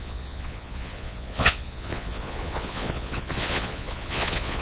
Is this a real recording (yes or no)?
no